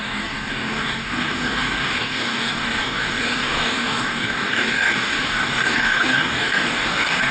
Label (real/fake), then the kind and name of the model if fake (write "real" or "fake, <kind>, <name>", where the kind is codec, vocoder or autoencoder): fake, codec, DAC